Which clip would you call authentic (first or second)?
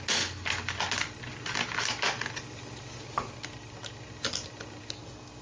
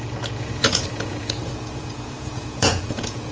first